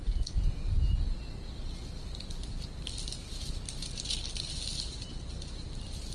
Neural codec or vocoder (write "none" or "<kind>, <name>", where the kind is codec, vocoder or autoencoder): none